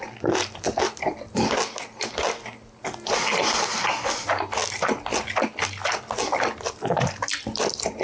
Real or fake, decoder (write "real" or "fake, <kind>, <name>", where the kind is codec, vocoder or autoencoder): real